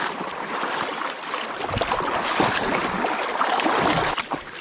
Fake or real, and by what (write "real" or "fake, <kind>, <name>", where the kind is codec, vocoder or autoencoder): fake, vocoder, BigVGAN v2